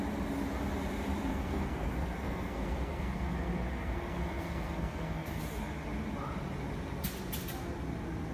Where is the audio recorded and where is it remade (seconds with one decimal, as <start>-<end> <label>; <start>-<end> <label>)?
0.0-1.3 recorded; 1.3-5.4 remade; 5.4-8.3 recorded